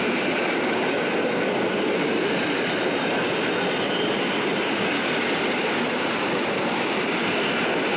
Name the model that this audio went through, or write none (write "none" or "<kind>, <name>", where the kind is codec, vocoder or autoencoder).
none